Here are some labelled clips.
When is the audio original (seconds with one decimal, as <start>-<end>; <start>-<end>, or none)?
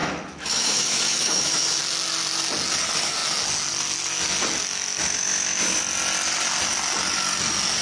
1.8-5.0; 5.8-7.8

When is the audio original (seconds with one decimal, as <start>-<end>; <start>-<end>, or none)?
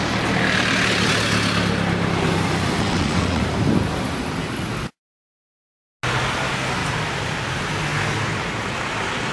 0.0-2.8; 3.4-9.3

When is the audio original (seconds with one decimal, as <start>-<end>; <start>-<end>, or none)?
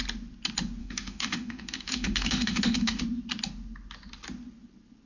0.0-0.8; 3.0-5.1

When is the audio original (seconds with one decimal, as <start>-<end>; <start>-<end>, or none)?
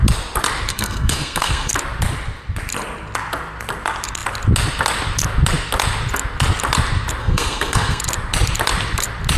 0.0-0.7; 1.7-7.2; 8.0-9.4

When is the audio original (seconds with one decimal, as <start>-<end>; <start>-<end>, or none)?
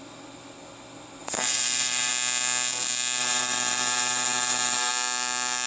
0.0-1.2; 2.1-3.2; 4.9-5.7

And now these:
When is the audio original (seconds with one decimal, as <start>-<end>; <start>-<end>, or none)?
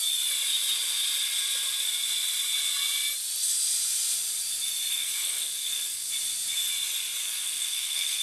0.0-4.9; 6.1-7.2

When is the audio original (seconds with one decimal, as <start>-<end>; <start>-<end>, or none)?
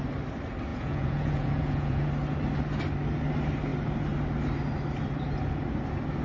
0.0-0.7; 2.1-6.2